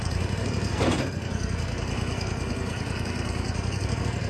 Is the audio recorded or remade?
remade